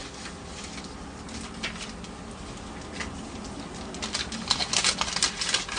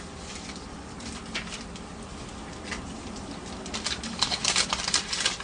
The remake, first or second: second